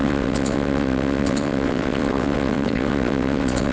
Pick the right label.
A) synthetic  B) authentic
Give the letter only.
A